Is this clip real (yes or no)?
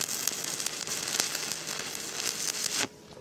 yes